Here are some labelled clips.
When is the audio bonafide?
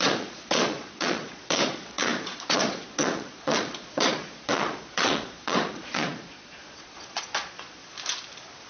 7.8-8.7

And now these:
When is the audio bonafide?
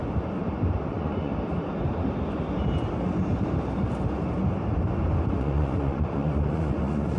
0.0-0.9; 1.3-5.3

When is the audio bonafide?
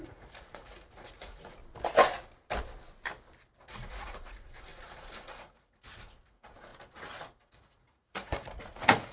1.6-3.6; 6.7-7.4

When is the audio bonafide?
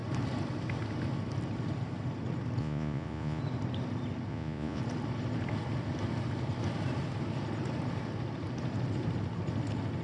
0.0-2.6; 3.4-4.3; 4.8-10.0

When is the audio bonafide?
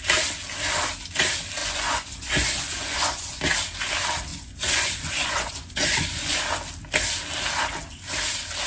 0.0-1.6; 3.4-4.3; 6.4-8.7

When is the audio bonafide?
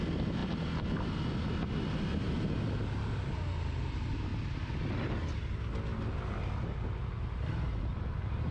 0.0-8.5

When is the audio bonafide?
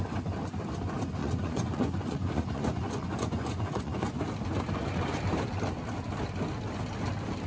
0.0-1.2; 4.2-7.5